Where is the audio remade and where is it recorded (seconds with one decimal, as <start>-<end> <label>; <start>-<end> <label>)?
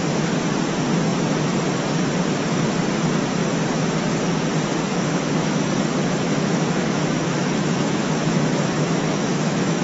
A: 0.0-4.9 recorded; 4.9-9.8 remade